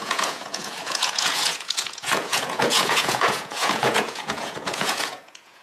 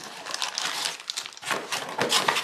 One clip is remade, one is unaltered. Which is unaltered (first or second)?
second